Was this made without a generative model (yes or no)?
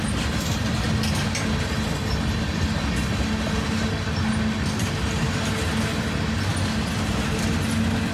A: yes